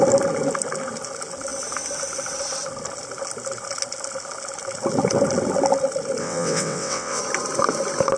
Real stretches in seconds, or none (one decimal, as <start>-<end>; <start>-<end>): 0.0-6.2; 7.2-8.2